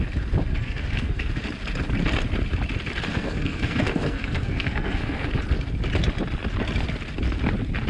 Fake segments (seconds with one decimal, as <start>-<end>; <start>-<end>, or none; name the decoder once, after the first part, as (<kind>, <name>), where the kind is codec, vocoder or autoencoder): 0.6-1.4 (codec, SNAC); 3.1-5.3